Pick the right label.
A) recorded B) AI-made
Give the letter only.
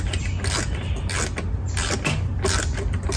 A